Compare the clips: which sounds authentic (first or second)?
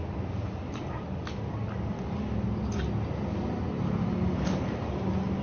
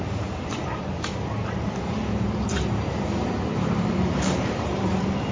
first